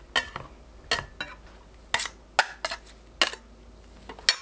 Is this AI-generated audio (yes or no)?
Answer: no